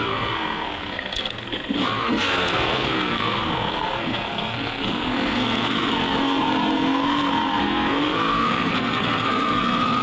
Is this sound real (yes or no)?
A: no